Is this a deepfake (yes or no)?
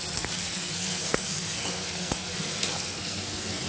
yes